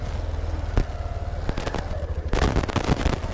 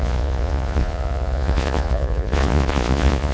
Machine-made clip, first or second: second